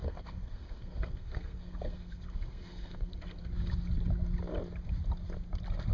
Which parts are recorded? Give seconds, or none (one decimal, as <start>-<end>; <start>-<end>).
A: 3.5-5.9

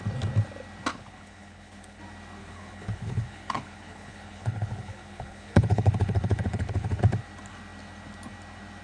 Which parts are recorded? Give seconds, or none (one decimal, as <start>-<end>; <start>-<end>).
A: 0.0-0.9; 2.0-2.4; 7.0-8.8

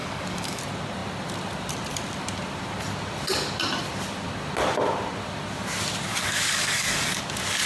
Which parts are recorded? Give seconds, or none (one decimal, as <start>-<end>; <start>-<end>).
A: 0.6-6.1; 7.2-7.7

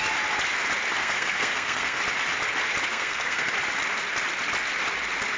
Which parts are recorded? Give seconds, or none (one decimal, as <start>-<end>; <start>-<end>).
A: 0.0-1.0; 2.0-2.9; 3.5-5.4

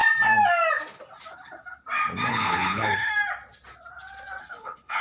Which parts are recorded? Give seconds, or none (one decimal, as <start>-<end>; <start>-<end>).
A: 0.0-2.3; 3.1-4.4

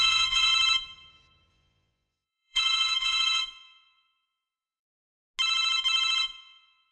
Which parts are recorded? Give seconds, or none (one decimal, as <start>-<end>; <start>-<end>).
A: 0.5-1.5; 4.8-6.2